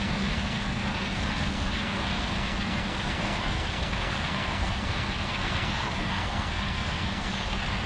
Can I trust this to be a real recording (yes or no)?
no